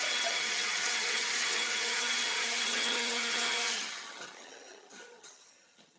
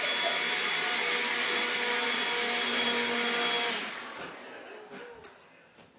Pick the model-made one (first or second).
first